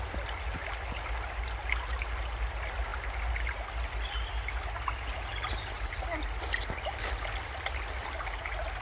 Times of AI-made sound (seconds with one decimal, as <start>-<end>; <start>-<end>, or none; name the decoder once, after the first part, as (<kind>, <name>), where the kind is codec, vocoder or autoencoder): none